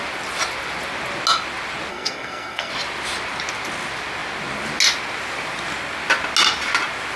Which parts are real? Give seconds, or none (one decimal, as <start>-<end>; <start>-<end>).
0.0-1.9; 2.7-7.2